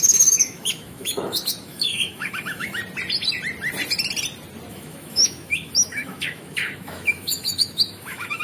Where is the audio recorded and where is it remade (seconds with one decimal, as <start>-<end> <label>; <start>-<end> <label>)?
0.0-2.8 remade; 2.8-4.7 recorded; 4.7-8.4 remade